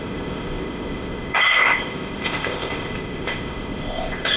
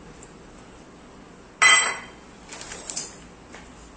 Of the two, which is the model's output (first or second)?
first